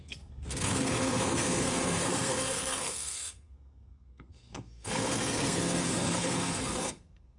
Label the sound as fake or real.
fake